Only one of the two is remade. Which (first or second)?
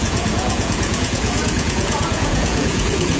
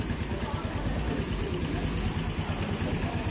first